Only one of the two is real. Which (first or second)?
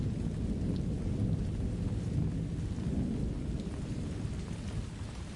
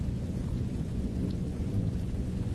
first